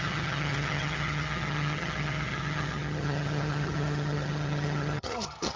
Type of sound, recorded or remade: remade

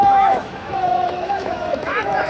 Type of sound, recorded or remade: remade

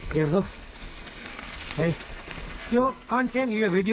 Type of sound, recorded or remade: remade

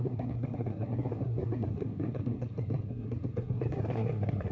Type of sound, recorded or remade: remade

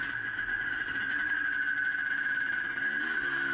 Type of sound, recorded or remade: recorded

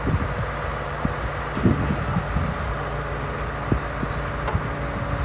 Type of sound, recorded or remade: recorded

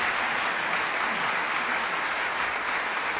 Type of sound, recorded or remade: recorded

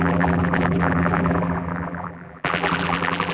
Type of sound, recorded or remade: remade